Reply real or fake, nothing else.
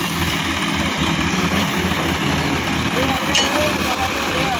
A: fake